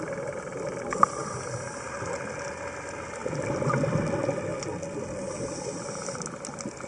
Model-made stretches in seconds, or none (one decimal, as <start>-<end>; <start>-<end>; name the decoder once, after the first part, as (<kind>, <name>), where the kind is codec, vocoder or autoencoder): none